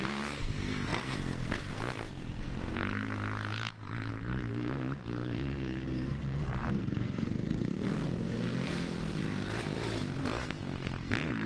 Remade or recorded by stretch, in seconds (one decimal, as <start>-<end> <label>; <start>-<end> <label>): 0.0-9.2 remade; 9.2-10.2 recorded; 10.2-11.5 remade